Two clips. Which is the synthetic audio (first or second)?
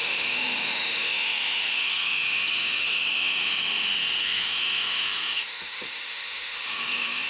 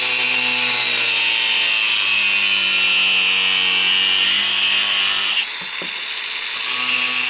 first